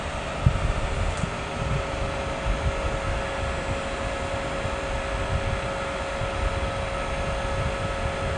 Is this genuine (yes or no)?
yes